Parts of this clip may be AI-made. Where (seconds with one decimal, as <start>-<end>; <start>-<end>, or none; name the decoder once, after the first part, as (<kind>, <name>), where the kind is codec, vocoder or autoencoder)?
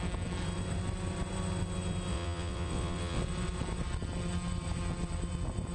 2.1-3.2 (vocoder, WaveNeXt)